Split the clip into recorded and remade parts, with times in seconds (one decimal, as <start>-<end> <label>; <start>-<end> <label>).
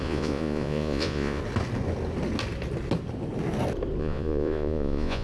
0.0-1.4 remade; 1.4-4.0 recorded; 4.0-5.2 remade